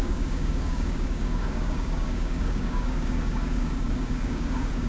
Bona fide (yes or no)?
no